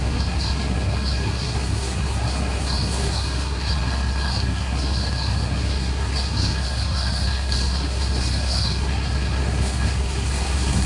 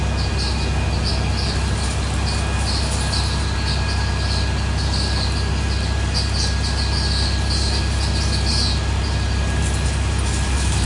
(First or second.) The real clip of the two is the second